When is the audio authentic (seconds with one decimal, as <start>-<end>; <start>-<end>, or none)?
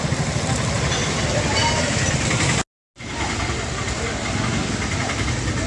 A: 0.0-5.7